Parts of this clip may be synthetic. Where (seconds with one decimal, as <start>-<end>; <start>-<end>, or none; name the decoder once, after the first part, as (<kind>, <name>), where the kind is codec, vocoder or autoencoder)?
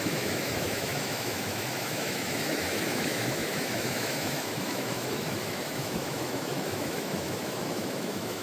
0.0-8.4 (autoencoder, DAC-VAE)